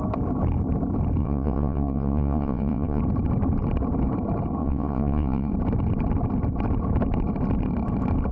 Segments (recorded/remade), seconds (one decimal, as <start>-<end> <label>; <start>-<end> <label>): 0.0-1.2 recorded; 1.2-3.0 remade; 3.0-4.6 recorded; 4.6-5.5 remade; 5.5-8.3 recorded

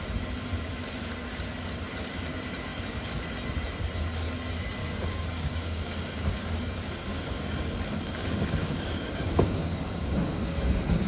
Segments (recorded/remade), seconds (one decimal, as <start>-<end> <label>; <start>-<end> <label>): 0.0-4.8 recorded; 4.8-7.6 remade; 7.6-8.2 recorded; 8.2-11.1 remade

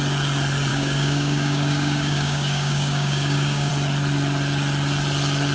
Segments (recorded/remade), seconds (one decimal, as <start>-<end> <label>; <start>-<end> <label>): 0.0-0.7 recorded; 0.7-3.7 remade; 3.7-5.5 recorded

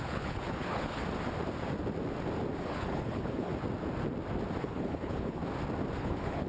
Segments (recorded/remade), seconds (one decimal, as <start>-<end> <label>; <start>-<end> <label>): 0.0-1.0 remade; 1.0-2.6 recorded; 2.6-3.5 remade; 3.5-4.6 recorded; 4.6-5.4 remade; 5.4-6.0 recorded; 6.0-6.5 remade